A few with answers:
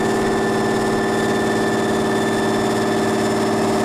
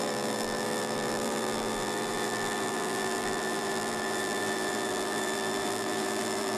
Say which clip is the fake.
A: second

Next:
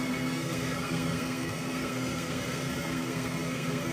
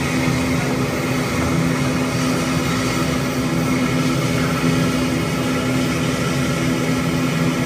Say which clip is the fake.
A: first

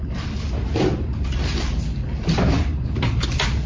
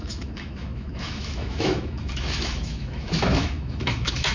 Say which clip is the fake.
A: second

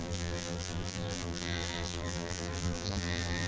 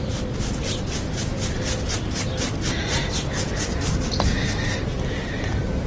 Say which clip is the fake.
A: first